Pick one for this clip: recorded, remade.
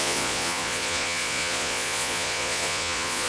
remade